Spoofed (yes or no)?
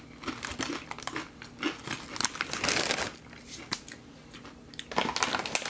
no